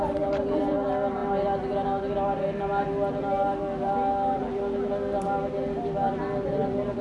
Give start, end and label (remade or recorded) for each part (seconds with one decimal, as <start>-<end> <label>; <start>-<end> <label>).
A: 0.0-7.0 recorded